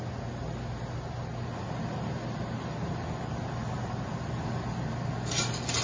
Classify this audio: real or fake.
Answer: real